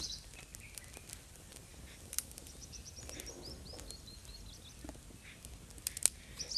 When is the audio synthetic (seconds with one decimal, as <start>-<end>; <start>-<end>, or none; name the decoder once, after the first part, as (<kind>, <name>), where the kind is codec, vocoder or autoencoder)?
none